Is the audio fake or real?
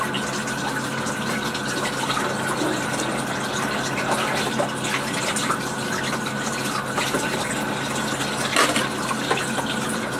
real